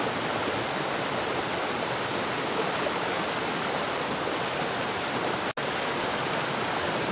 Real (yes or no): yes